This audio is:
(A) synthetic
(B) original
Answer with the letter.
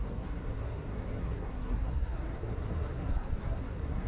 A